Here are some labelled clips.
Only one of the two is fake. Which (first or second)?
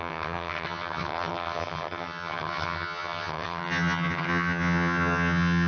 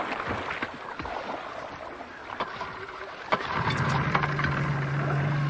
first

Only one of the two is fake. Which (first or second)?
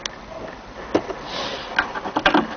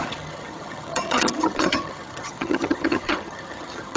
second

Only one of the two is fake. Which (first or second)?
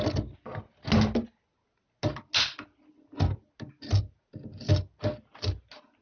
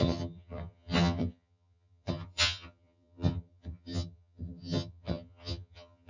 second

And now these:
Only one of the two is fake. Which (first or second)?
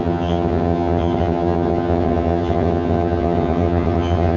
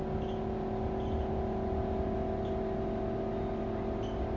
first